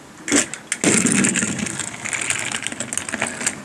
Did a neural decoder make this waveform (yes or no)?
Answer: no